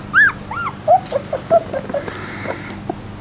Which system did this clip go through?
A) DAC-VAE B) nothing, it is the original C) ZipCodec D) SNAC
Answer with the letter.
B